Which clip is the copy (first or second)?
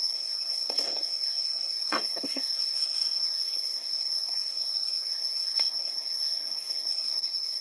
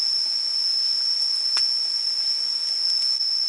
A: first